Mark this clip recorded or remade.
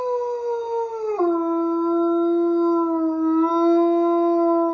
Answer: recorded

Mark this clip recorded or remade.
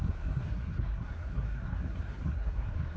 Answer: remade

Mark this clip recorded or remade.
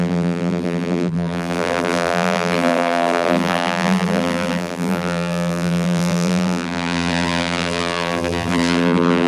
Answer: remade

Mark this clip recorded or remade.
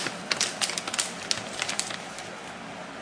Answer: recorded